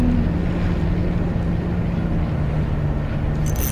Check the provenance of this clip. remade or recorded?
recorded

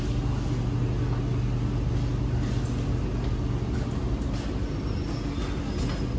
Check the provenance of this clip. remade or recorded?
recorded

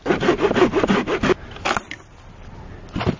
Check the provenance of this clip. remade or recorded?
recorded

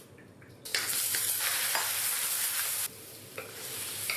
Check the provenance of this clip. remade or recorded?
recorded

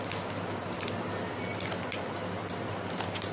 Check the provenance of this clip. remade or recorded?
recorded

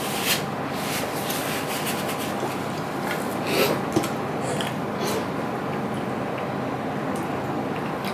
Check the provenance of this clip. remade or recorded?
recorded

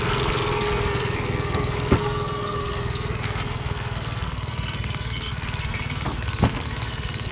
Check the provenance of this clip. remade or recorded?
remade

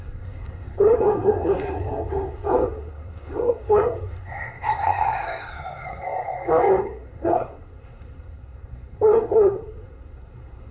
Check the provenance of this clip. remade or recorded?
remade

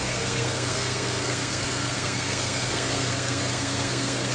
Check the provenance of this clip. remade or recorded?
remade